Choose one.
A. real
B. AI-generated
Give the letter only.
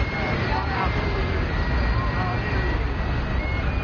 A